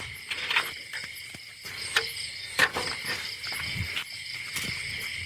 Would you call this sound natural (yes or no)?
yes